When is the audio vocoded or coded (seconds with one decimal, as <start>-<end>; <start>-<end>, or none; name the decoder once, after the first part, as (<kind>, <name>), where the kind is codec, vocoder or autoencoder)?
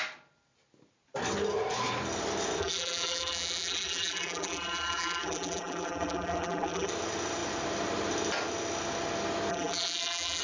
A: 2.6-6.9 (vocoder, BigVGAN v2); 9.5-10.4